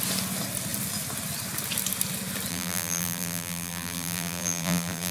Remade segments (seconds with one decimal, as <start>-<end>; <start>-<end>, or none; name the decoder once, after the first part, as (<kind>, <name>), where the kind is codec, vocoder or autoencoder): 2.5-5.1 (vocoder, BigVGAN v2)